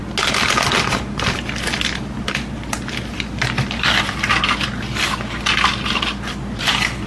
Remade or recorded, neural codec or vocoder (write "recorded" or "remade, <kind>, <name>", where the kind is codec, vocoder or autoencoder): recorded